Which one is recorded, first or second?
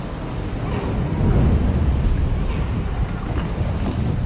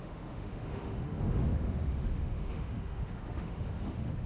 first